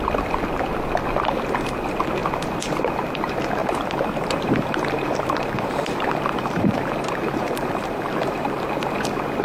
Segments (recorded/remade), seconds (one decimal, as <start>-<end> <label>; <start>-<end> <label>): 0.0-3.6 recorded; 3.6-8.7 remade; 8.7-9.4 recorded